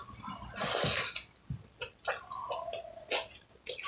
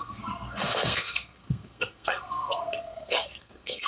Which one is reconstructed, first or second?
second